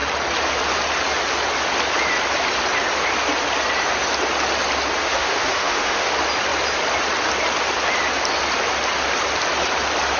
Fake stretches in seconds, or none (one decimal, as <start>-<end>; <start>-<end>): 5.0-6.1